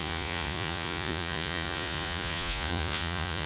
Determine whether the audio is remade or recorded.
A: remade